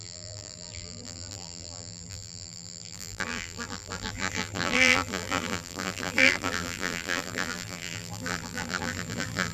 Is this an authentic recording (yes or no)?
no